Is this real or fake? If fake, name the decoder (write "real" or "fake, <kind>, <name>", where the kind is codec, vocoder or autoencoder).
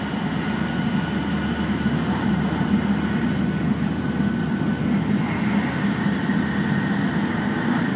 real